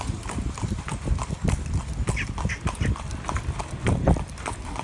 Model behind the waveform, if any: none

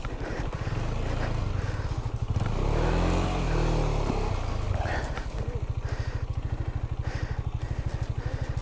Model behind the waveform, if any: none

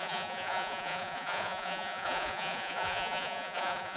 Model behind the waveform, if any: vocoder, Vocos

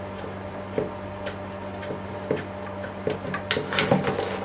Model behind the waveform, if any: none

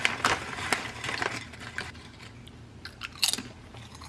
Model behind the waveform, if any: none